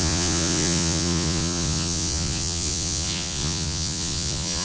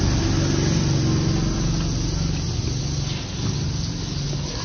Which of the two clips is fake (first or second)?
first